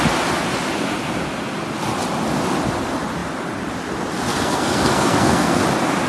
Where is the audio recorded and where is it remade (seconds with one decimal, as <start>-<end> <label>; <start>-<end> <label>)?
0.0-4.3 recorded; 4.3-5.6 remade; 5.6-6.1 recorded